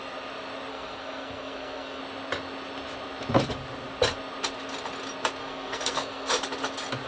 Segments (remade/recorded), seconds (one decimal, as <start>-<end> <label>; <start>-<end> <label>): 0.0-0.7 recorded; 0.7-2.0 remade; 2.0-5.4 recorded; 5.4-6.3 remade; 6.3-7.1 recorded